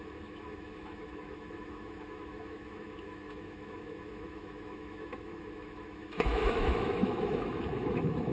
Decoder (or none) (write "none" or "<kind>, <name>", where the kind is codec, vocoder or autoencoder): autoencoder, DAC-VAE